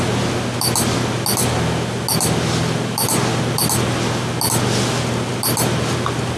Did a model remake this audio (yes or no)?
no